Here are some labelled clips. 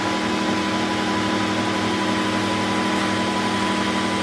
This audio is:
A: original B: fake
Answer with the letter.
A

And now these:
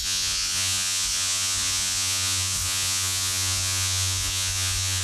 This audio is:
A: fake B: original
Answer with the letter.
A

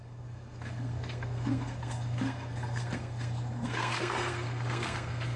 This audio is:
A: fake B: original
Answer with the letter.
A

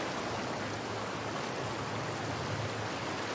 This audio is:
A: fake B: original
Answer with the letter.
B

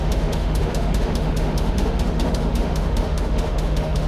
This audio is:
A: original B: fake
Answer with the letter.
B